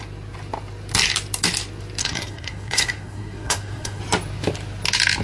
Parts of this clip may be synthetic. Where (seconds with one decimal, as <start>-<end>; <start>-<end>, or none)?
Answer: 2.0-4.0